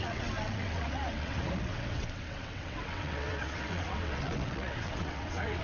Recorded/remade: remade